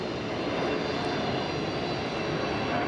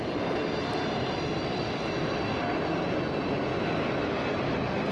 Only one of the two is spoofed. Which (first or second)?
second